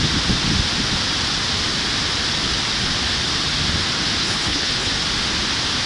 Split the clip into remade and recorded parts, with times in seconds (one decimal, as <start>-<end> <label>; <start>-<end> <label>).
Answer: 0.0-4.2 recorded; 4.2-4.9 remade; 4.9-5.9 recorded